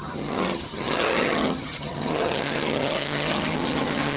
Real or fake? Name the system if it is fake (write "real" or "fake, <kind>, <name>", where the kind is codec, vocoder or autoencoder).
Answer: fake, vocoder, HiFi-GAN